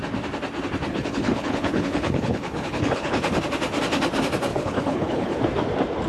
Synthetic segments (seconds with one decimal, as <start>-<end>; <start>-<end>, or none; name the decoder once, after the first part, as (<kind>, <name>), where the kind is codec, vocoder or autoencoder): 0.9-3.3 (codec, HILCodec); 4.5-5.4